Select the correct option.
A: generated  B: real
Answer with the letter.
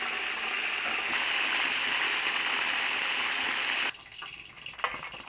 B